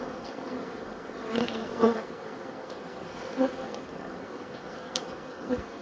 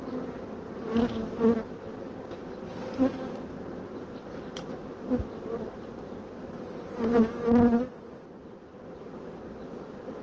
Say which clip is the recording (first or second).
second